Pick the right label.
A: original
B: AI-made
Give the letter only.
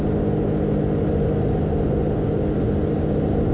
A